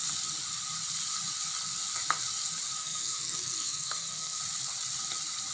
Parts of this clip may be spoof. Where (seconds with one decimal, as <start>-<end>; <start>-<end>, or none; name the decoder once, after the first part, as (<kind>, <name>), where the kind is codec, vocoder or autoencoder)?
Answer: 2.8-4.4 (codec, SNAC)